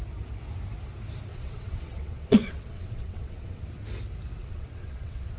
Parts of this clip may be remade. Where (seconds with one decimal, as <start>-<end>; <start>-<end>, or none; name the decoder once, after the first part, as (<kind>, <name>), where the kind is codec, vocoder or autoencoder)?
1.3-3.6 (vocoder, WaveNeXt); 4.4-5.4